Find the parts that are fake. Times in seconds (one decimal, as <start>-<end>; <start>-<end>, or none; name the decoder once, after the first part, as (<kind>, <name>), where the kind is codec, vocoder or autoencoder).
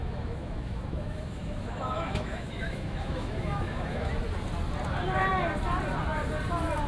0.0-4.1 (autoencoder, DAC-VAE)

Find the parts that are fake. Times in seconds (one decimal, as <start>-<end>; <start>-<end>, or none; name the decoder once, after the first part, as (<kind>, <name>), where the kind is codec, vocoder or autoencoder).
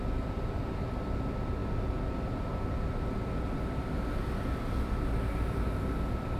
none